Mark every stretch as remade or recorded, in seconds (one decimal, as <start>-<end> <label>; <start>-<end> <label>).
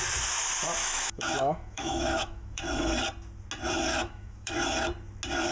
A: 0.0-0.8 recorded; 0.8-2.6 remade; 2.6-3.9 recorded; 3.9-4.5 remade; 4.5-5.5 recorded